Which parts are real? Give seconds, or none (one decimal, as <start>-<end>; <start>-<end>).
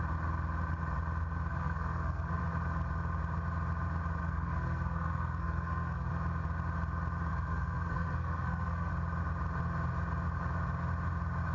0.0-1.5; 2.4-4.2; 6.1-7.3; 8.9-11.5